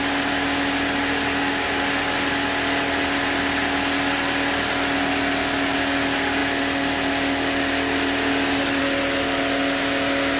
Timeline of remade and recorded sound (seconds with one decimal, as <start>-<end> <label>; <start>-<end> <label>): 0.0-10.4 recorded